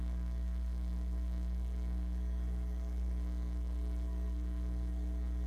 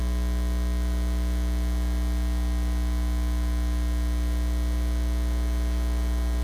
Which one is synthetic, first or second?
first